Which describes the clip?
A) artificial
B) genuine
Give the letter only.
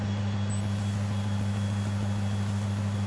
B